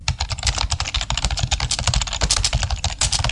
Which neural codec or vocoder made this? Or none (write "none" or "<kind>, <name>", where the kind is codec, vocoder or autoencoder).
none